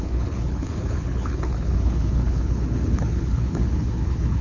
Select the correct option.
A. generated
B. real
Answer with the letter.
A